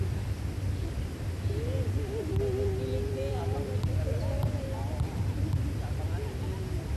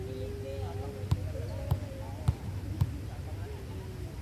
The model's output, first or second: first